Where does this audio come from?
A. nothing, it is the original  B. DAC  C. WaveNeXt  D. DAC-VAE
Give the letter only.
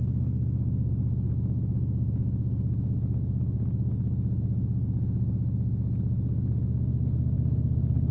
A